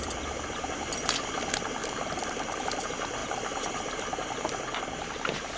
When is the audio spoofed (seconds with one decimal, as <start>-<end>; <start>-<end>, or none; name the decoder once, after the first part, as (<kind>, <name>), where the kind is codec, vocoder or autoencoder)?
1.8-2.8 (vocoder, BigVGAN v2); 3.2-4.8